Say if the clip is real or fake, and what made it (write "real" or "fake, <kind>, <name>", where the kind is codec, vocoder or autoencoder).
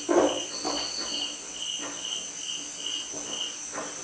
real